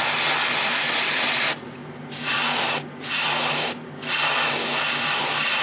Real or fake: real